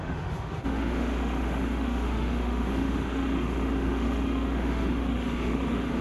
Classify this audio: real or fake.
fake